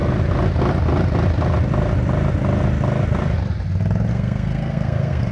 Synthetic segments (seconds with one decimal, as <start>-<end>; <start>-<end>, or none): 4.1-5.3